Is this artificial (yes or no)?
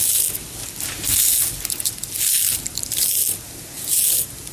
no